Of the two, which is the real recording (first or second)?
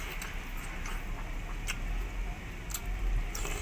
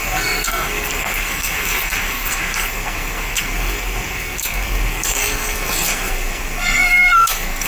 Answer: first